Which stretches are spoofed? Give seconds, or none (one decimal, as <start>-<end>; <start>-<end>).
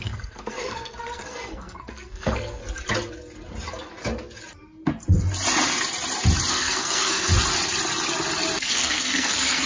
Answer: 0.0-2.6; 6.5-7.3; 8.7-9.7